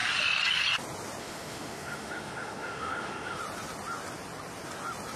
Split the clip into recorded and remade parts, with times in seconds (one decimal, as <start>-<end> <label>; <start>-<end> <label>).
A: 0.0-1.2 recorded; 1.2-3.4 remade; 3.4-5.2 recorded